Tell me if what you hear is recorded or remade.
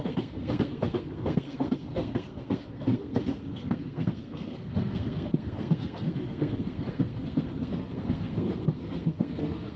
remade